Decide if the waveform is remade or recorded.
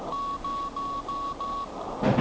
recorded